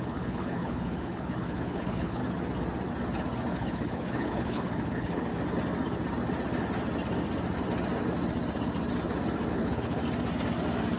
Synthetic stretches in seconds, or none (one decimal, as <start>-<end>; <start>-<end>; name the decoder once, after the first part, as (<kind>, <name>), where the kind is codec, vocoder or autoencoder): 0.0-2.2 (codec, HILCodec); 3.5-5.3; 9.5-10.0